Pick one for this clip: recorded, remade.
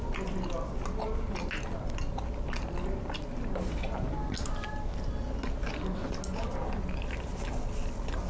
recorded